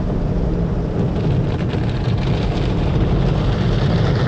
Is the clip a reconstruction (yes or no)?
no